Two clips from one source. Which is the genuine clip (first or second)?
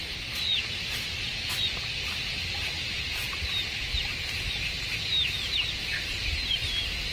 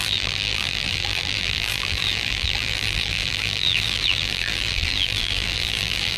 first